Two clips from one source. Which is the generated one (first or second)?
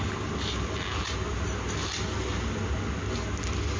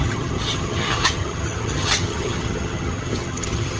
second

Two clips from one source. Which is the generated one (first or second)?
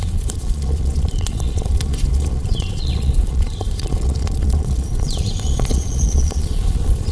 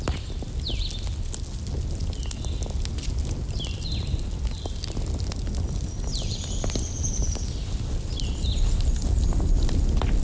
first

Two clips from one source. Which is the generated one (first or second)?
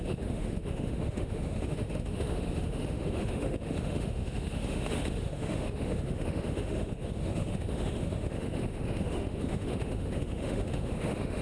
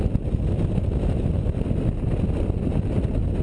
first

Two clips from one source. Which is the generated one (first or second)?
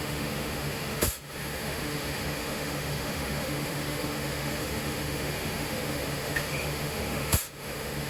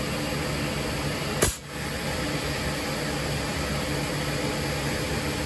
first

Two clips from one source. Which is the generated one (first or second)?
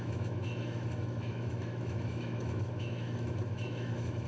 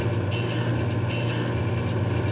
first